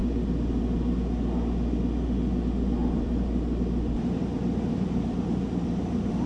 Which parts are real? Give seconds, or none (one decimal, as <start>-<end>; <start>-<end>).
0.0-2.8